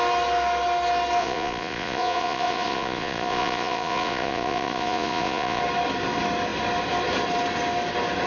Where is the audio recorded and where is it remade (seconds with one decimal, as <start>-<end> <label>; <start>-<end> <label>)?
0.0-1.2 recorded; 1.2-5.6 remade; 5.6-8.3 recorded